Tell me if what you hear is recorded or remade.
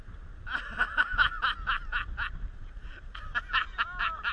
recorded